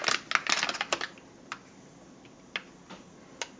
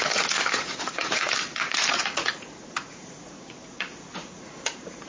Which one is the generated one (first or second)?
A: second